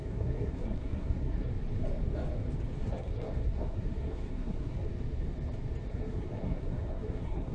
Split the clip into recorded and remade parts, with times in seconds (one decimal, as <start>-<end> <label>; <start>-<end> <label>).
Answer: 0.0-1.5 remade; 1.5-2.8 recorded; 2.8-4.9 remade; 4.9-5.9 recorded; 5.9-7.5 remade